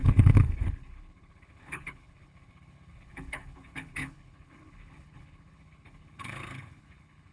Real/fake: fake